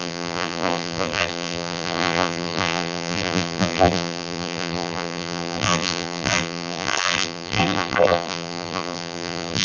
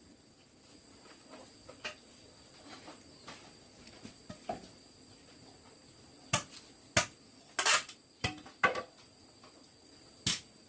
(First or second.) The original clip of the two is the second